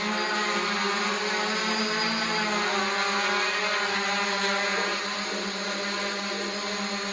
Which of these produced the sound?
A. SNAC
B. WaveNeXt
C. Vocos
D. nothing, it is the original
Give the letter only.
D